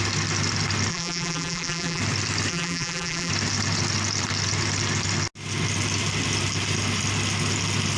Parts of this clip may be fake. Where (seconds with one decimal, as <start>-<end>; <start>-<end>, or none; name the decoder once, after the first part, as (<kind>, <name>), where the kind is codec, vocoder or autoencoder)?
0.9-2.0 (vocoder, BigVGAN v2); 2.5-3.3

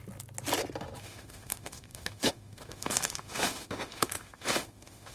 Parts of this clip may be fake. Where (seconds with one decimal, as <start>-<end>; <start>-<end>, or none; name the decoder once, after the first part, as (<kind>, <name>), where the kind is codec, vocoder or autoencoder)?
1.0-5.1 (autoencoder, DAC-VAE)

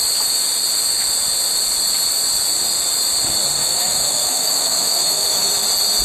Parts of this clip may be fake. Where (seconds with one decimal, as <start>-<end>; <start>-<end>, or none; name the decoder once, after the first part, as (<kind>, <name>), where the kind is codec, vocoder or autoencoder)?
3.6-5.5 (autoencoder, DAC-VAE)

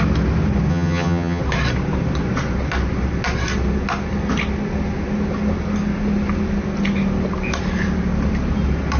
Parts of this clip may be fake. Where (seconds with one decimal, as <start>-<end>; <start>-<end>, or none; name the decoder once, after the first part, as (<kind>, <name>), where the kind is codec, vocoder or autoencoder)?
0.7-1.4 (vocoder, HiFi-GAN)

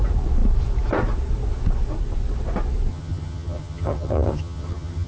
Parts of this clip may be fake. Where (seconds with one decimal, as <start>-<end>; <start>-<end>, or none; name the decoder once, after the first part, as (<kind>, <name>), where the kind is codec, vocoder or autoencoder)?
2.9-5.1 (vocoder, HiFi-GAN)

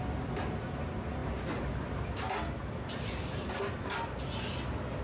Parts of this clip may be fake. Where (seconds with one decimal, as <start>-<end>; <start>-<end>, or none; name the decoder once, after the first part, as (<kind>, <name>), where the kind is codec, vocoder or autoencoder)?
none

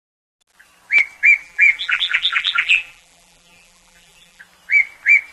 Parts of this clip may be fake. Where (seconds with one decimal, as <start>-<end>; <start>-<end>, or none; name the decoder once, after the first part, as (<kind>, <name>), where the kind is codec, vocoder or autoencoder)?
1.4-4.4 (vocoder, BigVGAN v2)